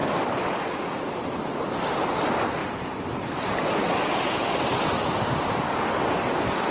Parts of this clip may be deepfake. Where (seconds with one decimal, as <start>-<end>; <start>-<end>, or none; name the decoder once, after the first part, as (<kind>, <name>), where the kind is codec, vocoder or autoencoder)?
none